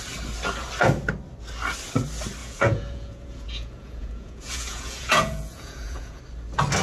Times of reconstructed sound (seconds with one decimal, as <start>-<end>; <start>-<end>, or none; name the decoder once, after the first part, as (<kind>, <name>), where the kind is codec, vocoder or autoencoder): 2.4-6.2 (vocoder, Vocos)

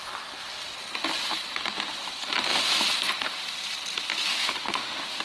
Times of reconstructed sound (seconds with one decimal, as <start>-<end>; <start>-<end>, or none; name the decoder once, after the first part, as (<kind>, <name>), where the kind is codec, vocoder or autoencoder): 4.3-5.2 (autoencoder, DAC-VAE)

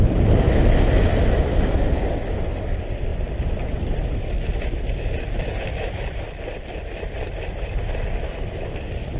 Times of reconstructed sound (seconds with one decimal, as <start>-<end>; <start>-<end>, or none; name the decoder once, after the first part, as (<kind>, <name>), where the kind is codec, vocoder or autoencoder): none

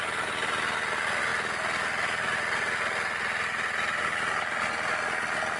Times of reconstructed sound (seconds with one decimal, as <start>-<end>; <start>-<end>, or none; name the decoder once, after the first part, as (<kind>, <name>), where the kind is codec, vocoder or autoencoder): none

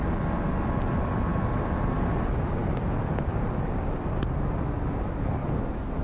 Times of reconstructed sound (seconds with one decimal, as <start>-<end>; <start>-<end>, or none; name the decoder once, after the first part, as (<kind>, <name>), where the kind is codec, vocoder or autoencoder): 1.3-2.0 (vocoder, BigVGAN v2)